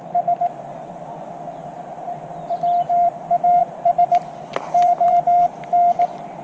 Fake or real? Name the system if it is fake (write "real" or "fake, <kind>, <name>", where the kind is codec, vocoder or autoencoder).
fake, vocoder, BigVGAN v2